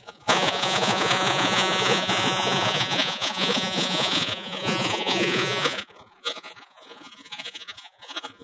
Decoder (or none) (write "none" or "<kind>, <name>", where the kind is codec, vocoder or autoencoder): vocoder, Vocos